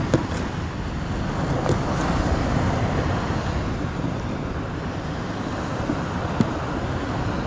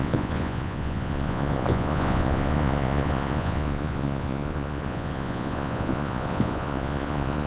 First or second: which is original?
first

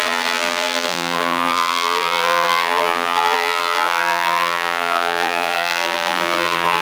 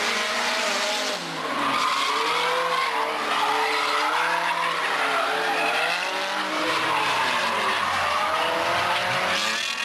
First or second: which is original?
second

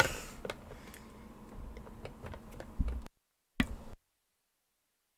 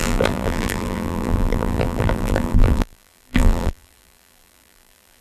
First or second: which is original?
first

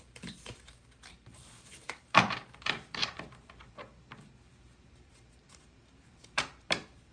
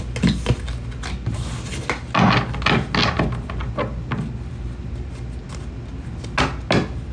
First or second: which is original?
second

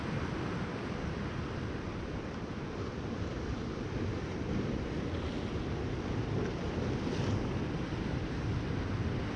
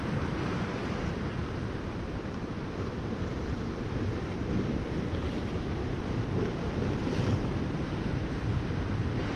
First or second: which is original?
first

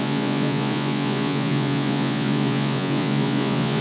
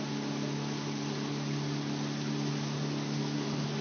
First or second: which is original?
second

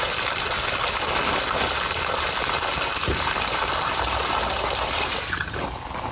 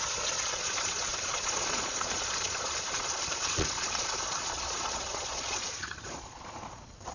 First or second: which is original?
first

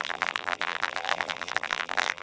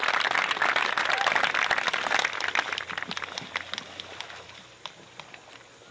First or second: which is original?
second